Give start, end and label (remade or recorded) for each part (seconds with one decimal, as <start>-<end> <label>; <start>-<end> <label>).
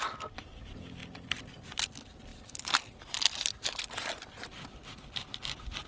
0.0-5.9 recorded